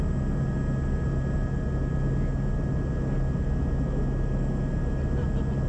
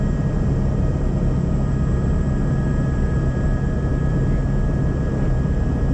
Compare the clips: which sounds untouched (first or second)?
first